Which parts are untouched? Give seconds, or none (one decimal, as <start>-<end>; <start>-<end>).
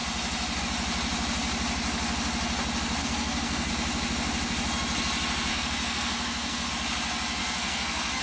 0.0-3.0; 3.7-5.5; 6.7-7.4